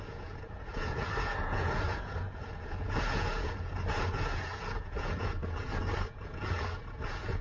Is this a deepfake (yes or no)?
yes